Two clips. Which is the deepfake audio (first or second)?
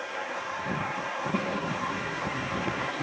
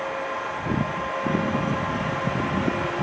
first